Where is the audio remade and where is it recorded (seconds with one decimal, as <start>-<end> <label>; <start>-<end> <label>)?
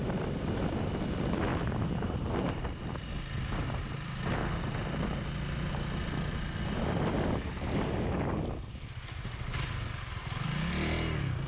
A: 0.0-1.5 recorded; 1.5-3.1 remade; 3.1-11.5 recorded